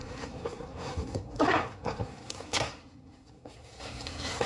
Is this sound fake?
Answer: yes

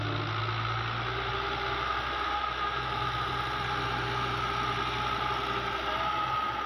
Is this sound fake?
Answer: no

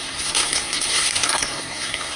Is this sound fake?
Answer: yes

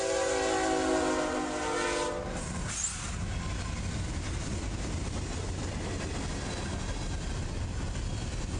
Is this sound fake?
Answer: no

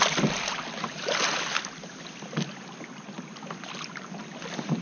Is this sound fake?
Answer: no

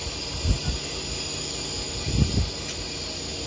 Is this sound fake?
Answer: no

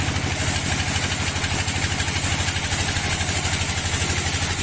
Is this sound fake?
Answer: no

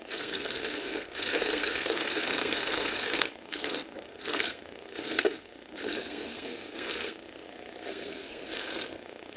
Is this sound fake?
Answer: yes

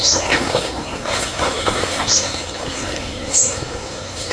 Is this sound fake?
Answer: yes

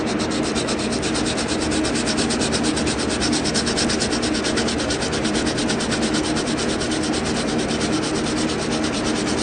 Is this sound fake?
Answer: no